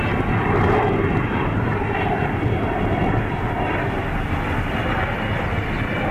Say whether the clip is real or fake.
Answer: real